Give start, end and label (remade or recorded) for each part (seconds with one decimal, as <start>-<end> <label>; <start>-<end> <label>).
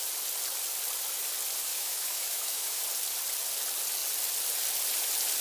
0.0-1.7 recorded; 1.7-2.8 remade; 2.8-5.4 recorded